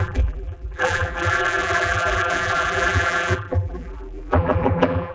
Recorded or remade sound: remade